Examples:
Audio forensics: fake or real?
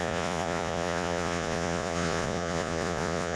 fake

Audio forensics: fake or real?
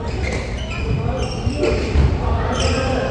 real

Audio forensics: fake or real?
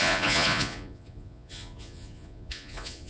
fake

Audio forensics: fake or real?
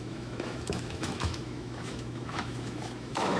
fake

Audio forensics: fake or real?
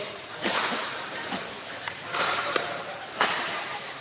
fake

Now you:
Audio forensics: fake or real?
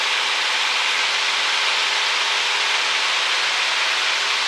real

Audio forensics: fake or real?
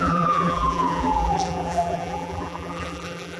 fake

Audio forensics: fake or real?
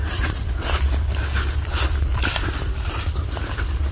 fake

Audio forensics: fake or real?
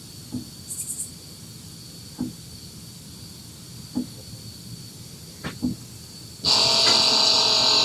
real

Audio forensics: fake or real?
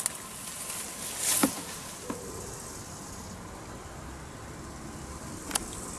real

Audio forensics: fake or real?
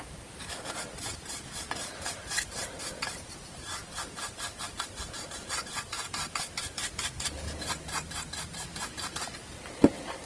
real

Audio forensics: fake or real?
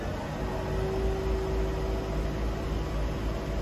real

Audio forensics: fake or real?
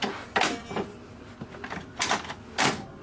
real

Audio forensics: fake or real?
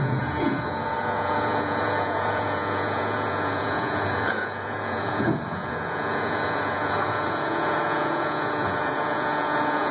fake